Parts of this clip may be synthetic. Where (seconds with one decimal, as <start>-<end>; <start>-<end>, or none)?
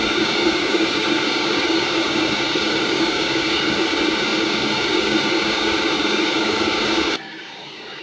0.0-8.0